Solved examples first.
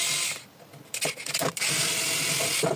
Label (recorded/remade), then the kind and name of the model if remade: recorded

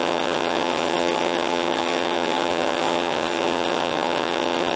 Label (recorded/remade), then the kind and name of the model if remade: remade, vocoder, HiFi-GAN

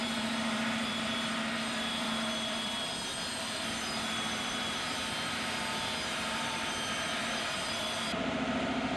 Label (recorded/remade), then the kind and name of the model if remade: remade, vocoder, BigVGAN v2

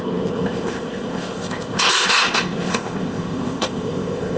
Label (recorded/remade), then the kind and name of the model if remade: remade, codec, ZipCodec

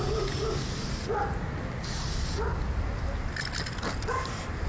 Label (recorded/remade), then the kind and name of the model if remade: recorded